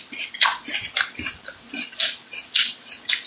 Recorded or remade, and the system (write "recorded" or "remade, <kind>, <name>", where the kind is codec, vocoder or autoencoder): recorded